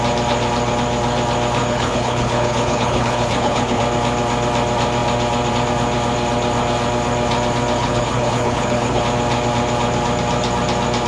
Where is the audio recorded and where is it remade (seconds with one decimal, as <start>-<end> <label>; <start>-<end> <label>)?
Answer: 0.0-1.6 recorded; 1.6-3.8 remade; 3.8-7.8 recorded; 7.8-9.0 remade; 9.0-11.1 recorded